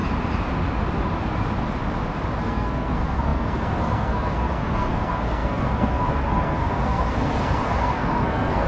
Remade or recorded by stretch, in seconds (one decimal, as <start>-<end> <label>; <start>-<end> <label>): 0.0-2.4 recorded; 2.4-8.7 remade